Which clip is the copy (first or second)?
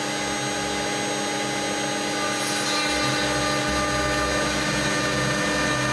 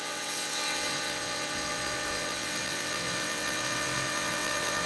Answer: second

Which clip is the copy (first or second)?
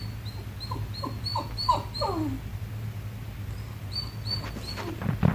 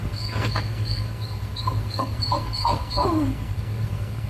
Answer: second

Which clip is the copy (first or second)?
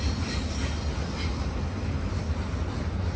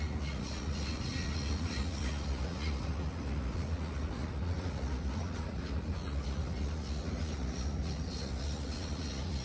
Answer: second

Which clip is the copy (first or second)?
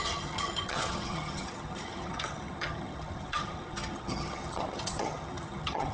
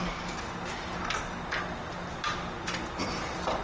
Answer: first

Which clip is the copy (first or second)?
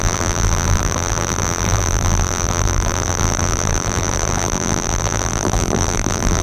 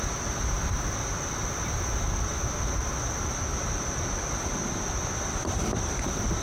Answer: first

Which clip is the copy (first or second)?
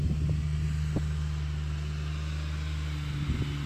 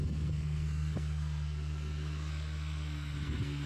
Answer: second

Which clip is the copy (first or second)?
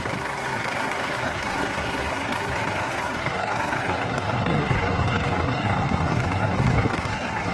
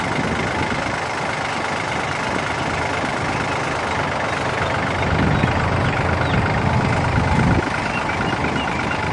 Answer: first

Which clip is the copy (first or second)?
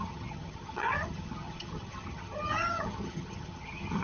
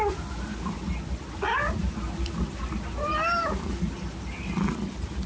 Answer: first